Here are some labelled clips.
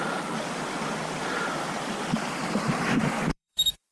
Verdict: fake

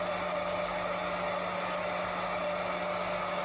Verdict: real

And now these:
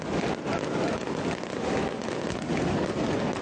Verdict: real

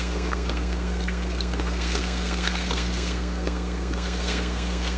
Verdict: fake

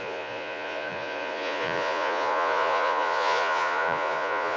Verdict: fake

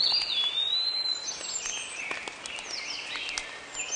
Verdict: real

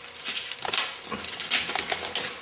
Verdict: real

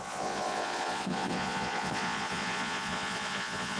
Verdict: fake